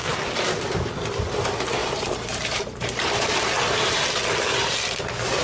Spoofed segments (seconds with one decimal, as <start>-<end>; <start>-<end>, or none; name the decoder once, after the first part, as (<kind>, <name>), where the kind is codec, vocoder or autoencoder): 1.8-4.1 (vocoder, BigVGAN v2)